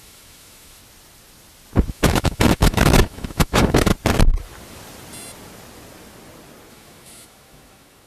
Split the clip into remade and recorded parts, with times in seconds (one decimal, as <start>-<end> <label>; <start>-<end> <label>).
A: 0.0-0.8 remade; 0.8-1.9 recorded; 1.9-3.9 remade; 3.9-6.7 recorded; 6.7-8.1 remade